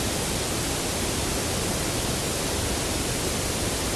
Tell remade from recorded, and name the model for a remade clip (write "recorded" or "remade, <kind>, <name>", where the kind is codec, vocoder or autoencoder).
recorded